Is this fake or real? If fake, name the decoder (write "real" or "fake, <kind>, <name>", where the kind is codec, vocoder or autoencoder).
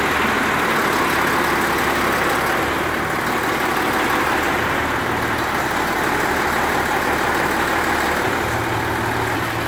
real